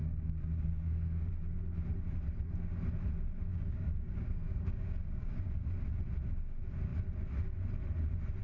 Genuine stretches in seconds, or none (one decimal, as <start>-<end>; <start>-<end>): 1.3-3.5; 5.7-8.4